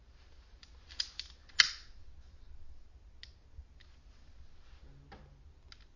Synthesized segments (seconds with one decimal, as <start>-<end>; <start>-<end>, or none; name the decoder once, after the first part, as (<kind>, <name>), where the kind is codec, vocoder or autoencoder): none